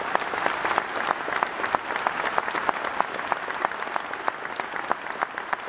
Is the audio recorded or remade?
recorded